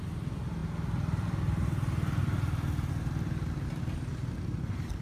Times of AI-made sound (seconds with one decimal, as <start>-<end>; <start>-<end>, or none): none

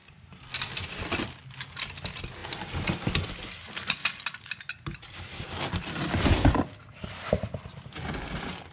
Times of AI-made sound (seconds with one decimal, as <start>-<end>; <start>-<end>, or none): none

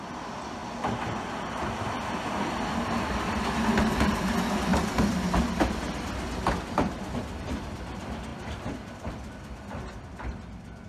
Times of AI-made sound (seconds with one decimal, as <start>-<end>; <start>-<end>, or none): 0.6-4.3; 4.7-5.8; 8.3-9.3

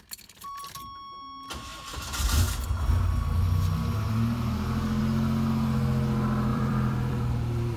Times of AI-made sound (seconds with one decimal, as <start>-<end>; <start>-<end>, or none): 6.5-7.8

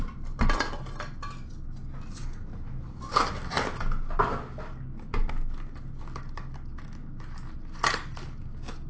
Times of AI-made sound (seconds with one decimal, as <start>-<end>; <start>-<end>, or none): none

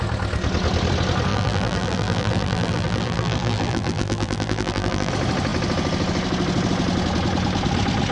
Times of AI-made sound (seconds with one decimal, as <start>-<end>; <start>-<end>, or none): 1.3-5.1

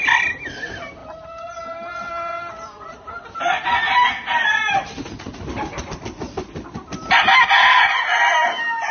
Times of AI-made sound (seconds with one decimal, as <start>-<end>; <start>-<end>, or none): 1.0-3.1

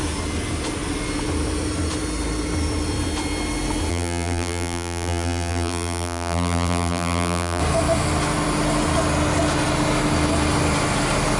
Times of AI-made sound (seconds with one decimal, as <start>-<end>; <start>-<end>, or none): 3.9-7.6